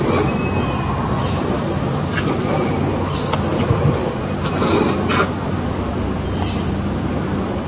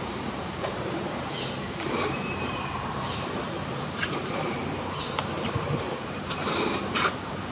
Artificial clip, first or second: second